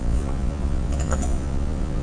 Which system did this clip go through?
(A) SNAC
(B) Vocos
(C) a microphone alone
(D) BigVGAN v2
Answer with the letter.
B